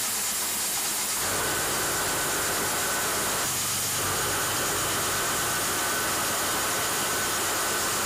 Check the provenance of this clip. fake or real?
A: real